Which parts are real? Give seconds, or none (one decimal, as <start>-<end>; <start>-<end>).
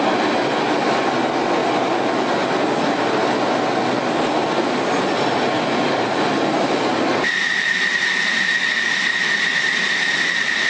0.0-10.7